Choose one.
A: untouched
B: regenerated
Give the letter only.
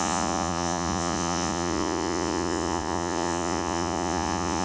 B